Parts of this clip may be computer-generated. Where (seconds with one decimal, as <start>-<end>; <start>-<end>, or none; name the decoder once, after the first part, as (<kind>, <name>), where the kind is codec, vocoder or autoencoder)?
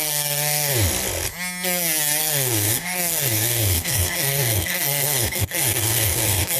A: 0.0-0.7 (codec, SNAC); 2.2-6.6